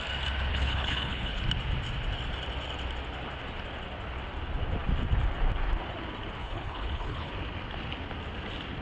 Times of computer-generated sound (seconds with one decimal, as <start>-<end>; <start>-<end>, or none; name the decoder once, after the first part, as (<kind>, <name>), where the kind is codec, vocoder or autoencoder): 0.5-1.4 (codec, HILCodec); 6.4-7.3